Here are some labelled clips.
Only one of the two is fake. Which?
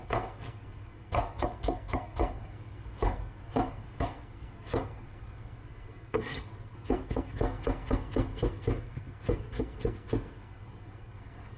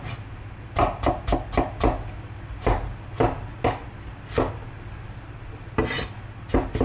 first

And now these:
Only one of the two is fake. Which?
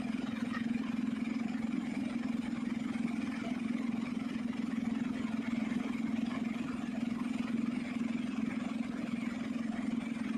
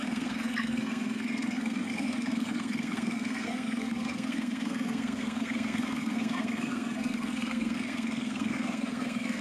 second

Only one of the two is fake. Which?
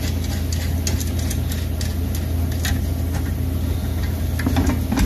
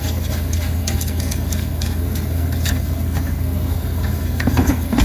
second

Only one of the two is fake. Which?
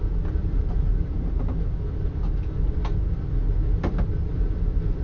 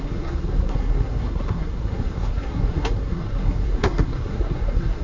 second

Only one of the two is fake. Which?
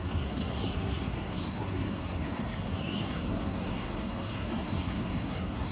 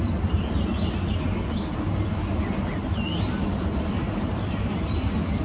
first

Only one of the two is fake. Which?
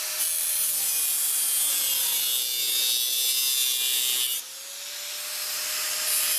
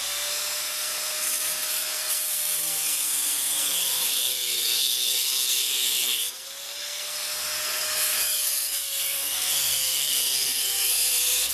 second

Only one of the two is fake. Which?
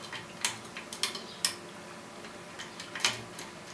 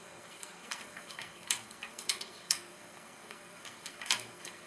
second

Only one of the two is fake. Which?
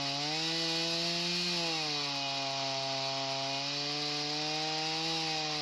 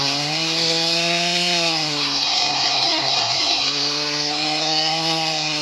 second